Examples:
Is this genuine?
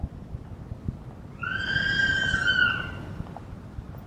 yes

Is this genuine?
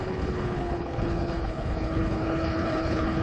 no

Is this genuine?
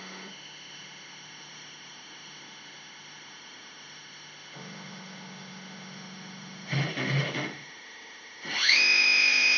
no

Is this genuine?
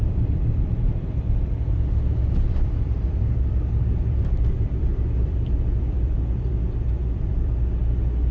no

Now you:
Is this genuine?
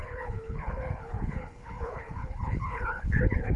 no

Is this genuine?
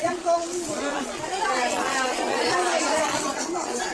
no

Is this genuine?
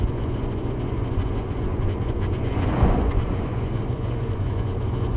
no